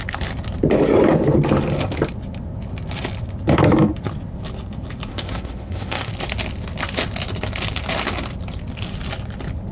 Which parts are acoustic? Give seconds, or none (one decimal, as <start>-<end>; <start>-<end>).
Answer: 0.0-5.1; 6.1-9.7